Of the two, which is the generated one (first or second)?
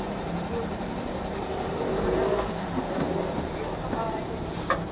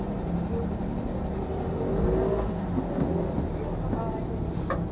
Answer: first